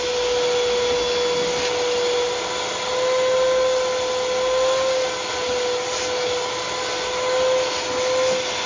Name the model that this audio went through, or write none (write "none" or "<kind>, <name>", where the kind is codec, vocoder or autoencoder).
none